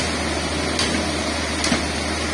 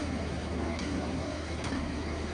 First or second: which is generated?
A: second